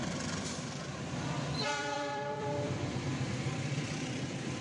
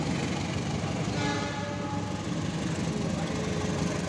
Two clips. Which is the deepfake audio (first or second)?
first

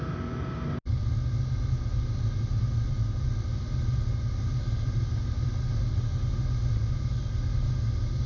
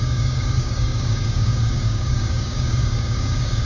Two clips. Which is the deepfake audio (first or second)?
second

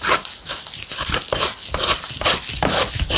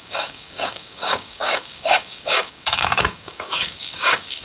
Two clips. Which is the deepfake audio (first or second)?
second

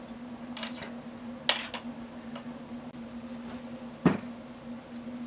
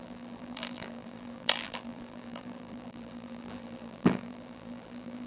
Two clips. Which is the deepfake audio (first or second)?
second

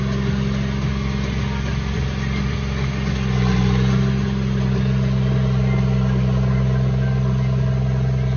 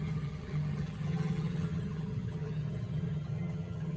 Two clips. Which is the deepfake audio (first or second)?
second